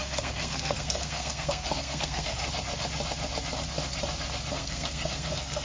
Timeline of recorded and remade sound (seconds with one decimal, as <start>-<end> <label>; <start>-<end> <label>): 0.0-2.4 remade; 2.4-4.5 recorded; 4.5-5.6 remade